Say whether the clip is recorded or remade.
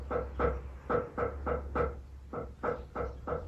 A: recorded